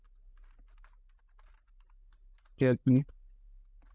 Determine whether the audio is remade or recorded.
recorded